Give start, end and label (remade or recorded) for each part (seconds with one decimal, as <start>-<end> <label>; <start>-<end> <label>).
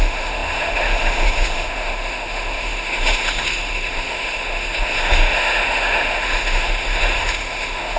0.0-8.0 remade